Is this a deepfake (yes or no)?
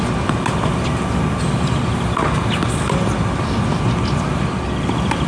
no